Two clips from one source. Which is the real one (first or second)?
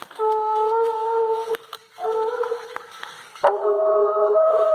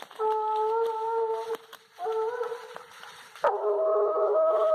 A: second